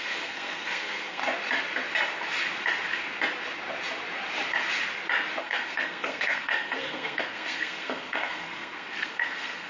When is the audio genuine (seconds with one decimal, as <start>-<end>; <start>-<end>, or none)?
1.2-5.4